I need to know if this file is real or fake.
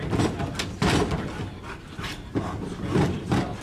real